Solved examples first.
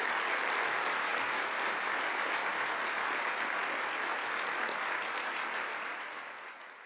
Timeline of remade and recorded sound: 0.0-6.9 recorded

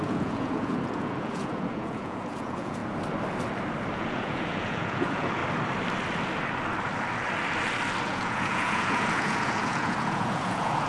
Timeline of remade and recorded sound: 0.0-2.8 remade; 2.8-4.0 recorded; 4.0-5.4 remade; 5.4-8.0 recorded; 8.0-10.9 remade

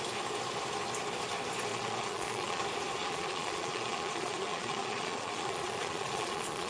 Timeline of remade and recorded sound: 0.0-1.7 recorded; 1.7-2.6 remade; 2.6-3.0 recorded; 3.0-6.7 remade

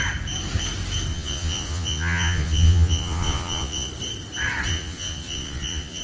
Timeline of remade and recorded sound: 0.0-1.1 recorded; 1.1-3.9 remade; 3.9-4.7 recorded; 4.7-6.0 remade

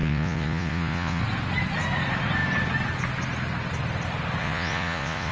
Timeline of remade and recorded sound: 0.0-1.2 remade; 1.2-4.4 recorded; 4.4-5.3 remade

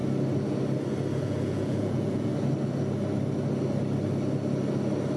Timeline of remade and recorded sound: 0.0-1.2 recorded; 1.2-2.3 remade; 2.3-5.2 recorded

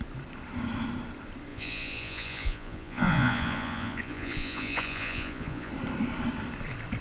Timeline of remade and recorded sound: 0.0-1.5 recorded; 1.5-5.7 remade; 5.7-7.0 recorded